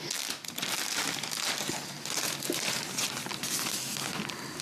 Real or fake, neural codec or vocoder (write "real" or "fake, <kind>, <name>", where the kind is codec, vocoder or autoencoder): real